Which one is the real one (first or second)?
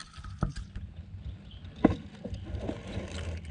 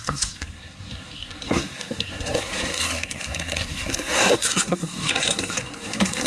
first